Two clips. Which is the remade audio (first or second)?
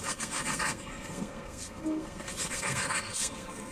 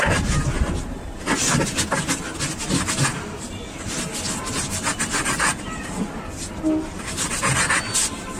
first